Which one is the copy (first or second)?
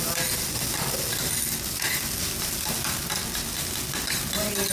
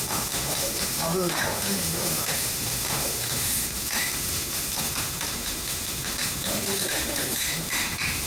second